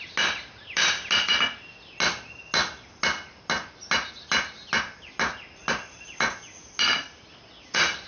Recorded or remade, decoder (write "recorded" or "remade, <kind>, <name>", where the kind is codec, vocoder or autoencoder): recorded